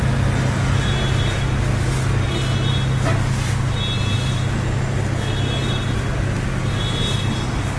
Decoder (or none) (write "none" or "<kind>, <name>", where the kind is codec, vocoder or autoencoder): none